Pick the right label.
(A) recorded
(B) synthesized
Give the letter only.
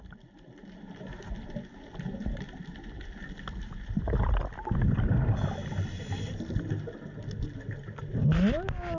A